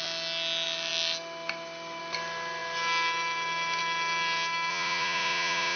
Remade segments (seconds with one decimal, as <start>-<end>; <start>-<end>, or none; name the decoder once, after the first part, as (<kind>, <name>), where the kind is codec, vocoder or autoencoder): 4.7-5.8 (vocoder, Vocos)